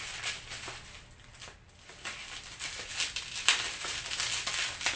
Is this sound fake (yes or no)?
no